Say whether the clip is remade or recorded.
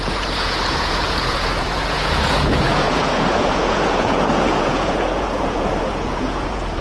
remade